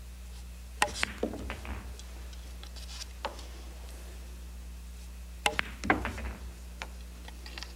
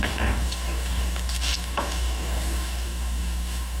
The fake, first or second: second